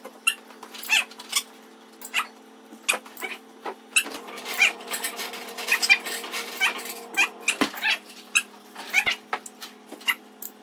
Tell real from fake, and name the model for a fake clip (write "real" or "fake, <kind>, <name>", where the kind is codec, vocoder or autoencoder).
real